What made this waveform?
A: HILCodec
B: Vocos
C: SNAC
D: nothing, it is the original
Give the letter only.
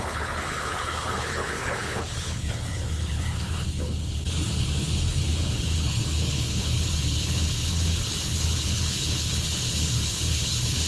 A